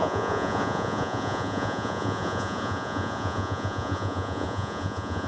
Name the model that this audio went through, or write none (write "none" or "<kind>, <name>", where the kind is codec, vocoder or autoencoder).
vocoder, Vocos